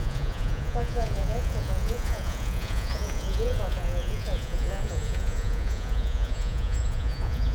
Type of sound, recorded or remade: remade